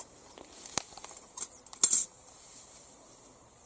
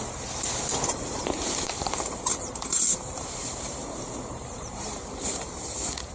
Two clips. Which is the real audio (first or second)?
first